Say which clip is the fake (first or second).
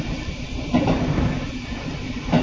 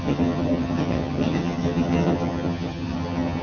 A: second